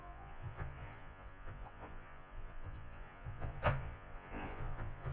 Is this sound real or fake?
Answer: fake